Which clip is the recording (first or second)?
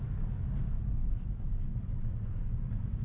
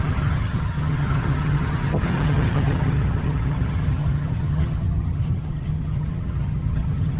first